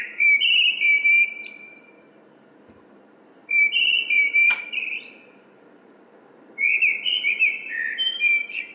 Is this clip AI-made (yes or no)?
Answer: yes